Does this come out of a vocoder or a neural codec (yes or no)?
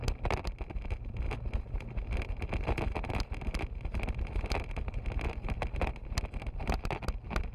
no